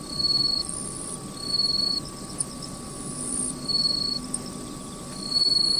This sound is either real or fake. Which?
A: fake